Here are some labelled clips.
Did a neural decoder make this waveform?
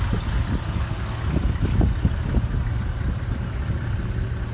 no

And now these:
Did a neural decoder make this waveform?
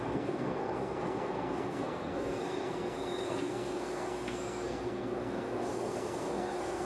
yes